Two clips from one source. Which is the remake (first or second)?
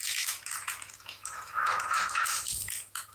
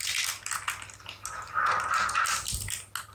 first